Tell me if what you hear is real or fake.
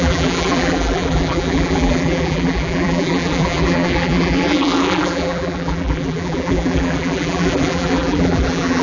fake